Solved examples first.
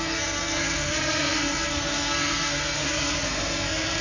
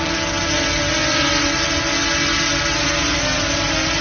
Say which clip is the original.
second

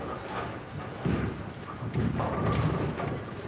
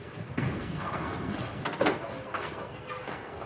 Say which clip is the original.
first